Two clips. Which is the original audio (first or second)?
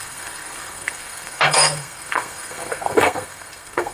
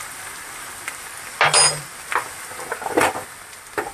second